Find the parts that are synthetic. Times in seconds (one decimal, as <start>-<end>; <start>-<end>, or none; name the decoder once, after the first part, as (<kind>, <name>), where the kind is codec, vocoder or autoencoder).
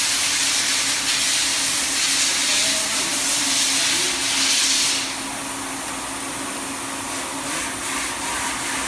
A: none